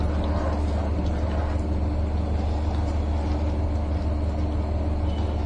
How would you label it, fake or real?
real